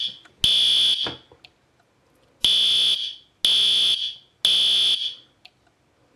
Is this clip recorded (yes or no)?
yes